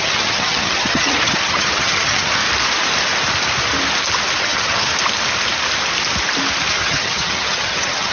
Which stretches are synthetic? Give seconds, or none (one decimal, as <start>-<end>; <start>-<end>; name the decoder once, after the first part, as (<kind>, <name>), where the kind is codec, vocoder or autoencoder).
0.0-2.4 (vocoder, HiFi-GAN); 4.4-4.9; 6.7-8.1